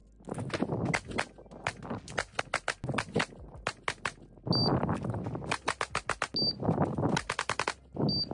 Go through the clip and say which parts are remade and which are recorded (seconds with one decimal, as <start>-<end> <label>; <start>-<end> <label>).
0.0-8.3 recorded